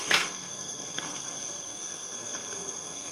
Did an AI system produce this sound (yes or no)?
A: yes